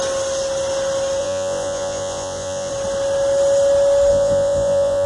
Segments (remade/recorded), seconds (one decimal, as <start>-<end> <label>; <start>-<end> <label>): 0.0-1.2 recorded; 1.2-2.7 remade; 2.7-4.1 recorded; 4.1-5.1 remade